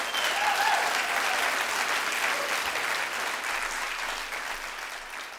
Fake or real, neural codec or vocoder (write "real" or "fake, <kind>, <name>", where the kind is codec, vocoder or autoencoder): real